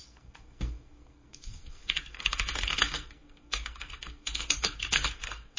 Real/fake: fake